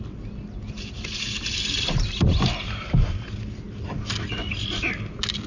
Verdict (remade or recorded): recorded